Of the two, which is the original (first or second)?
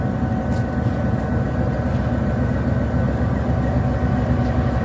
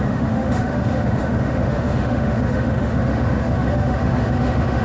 first